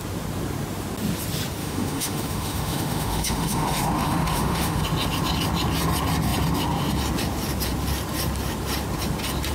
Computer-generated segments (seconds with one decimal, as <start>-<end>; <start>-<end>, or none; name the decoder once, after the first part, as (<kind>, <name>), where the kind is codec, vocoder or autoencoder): 1.6-4.8 (autoencoder, DAC-VAE)